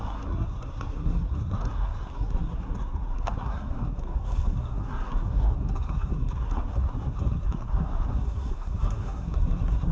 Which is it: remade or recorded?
remade